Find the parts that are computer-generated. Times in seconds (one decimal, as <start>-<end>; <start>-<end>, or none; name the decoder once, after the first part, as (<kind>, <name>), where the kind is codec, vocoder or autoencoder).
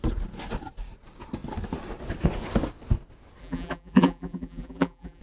3.4-5.2 (vocoder, BigVGAN v2)